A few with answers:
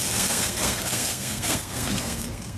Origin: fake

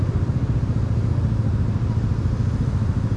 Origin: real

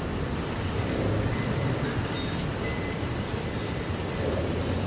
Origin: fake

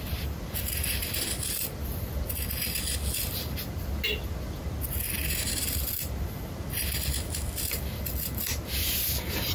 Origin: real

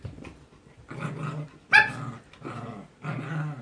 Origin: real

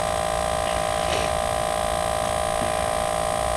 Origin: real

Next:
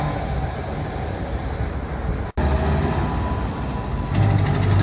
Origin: real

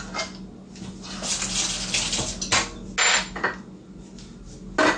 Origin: real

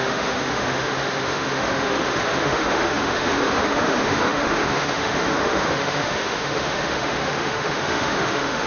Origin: fake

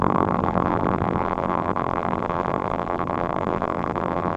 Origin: fake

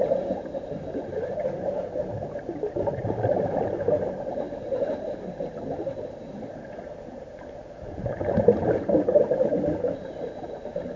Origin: fake